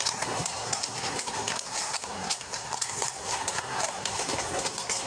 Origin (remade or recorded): remade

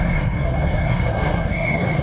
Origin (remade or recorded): remade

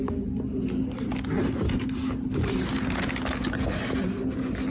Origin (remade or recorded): recorded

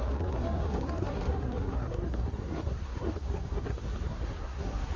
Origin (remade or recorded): remade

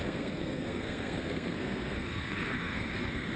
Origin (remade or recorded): remade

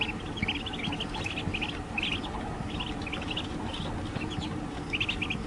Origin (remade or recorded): recorded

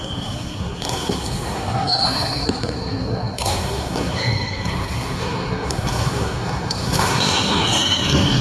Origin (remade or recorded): remade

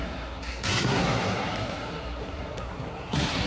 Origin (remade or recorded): remade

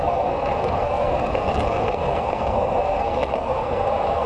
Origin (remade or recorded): remade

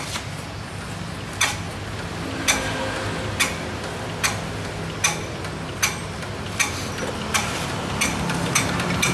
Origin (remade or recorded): recorded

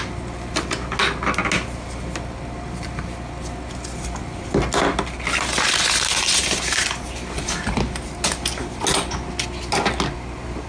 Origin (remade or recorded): recorded